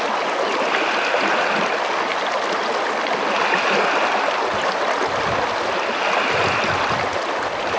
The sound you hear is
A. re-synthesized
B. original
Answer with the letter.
B